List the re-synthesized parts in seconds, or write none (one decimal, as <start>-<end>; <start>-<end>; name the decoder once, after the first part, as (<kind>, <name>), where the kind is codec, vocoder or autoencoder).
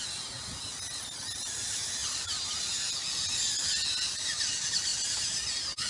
none